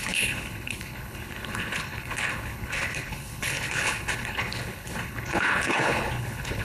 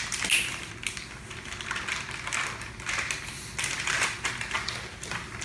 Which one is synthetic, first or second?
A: first